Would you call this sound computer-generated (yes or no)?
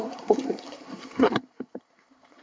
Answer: yes